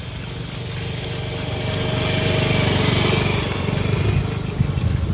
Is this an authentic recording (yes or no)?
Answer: yes